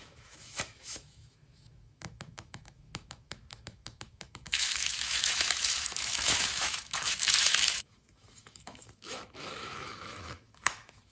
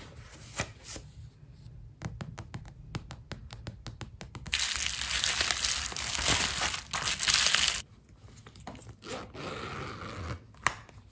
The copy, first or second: first